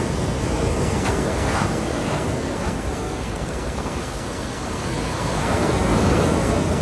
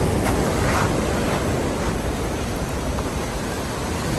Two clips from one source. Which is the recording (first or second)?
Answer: second